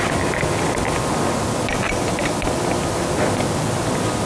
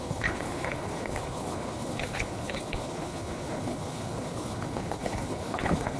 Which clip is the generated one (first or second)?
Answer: second